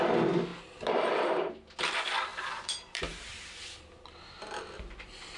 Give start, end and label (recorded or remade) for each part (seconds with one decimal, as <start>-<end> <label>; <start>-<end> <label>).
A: 0.0-0.5 recorded; 0.5-1.5 remade; 1.5-2.3 recorded; 2.3-3.5 remade; 3.5-5.4 recorded